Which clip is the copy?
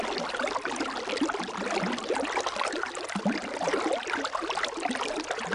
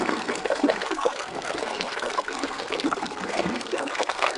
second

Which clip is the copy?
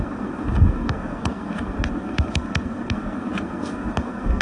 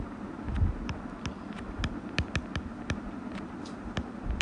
first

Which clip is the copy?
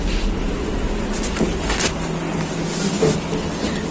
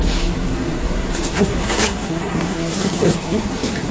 second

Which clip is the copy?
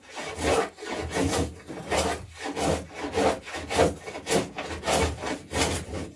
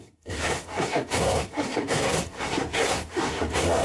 second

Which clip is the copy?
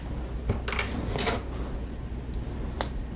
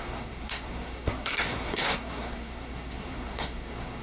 second